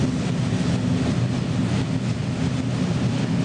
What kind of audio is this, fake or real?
real